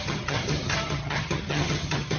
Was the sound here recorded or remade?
remade